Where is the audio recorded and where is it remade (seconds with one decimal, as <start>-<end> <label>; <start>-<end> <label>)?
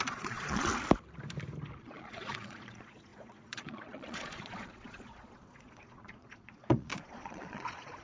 0.0-0.7 remade; 0.7-1.8 recorded; 1.8-8.0 remade